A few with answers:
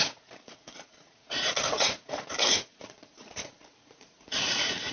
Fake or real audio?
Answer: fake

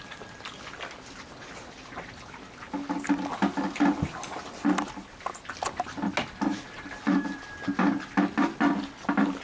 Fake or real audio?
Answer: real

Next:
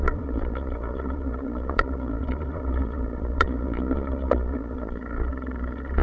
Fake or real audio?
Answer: fake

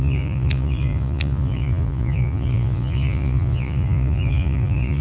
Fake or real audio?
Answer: fake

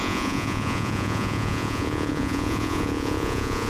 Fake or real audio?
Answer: fake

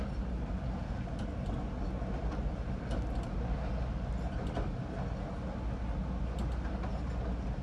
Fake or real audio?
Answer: real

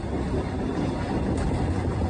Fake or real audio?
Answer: real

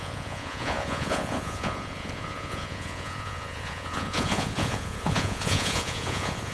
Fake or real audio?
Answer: fake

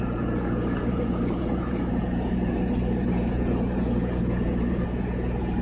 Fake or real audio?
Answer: fake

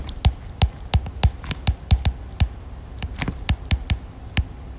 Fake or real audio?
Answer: real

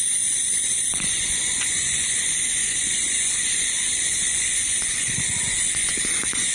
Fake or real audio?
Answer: fake